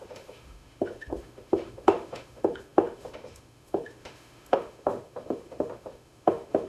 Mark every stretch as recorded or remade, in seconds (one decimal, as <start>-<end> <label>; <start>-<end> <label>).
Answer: 0.0-6.7 remade